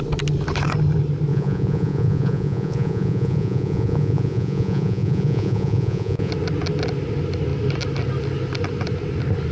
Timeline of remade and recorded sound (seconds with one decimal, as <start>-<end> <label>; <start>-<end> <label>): 0.0-1.3 recorded; 1.3-6.3 remade; 6.3-9.5 recorded